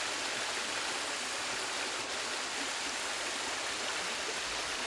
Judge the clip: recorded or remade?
recorded